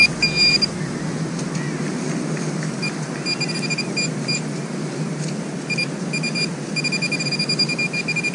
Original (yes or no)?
yes